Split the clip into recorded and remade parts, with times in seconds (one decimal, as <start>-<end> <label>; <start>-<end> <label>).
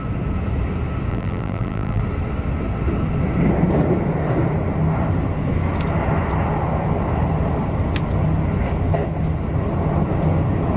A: 0.0-1.1 recorded; 1.1-2.0 remade; 2.0-10.8 recorded